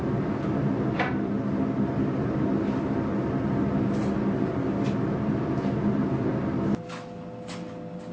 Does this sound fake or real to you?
real